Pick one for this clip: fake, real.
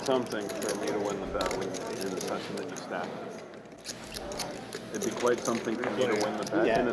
real